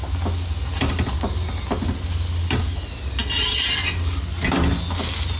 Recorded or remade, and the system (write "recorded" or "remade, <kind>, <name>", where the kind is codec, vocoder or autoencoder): recorded